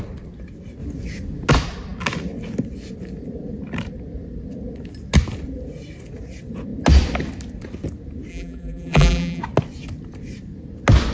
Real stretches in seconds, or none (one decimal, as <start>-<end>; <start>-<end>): 0.0-8.3; 9.4-11.1